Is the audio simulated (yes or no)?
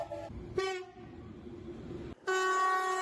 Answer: no